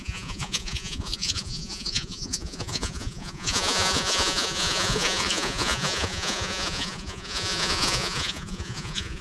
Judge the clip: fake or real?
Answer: fake